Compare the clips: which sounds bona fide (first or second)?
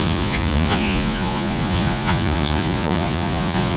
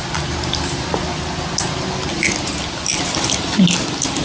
second